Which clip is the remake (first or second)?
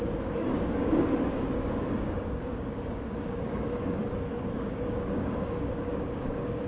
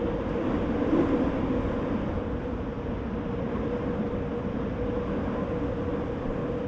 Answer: first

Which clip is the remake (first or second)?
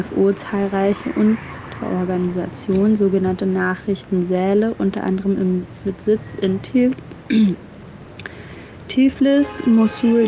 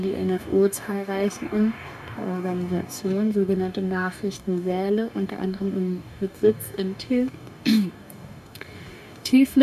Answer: second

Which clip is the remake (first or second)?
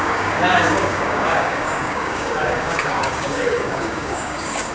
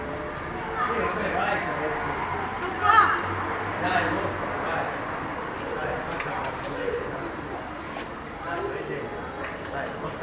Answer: first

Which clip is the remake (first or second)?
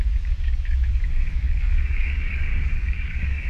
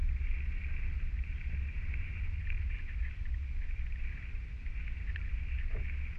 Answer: first